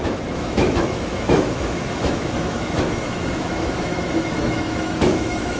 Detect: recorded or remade remade